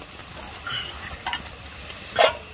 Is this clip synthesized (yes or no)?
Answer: no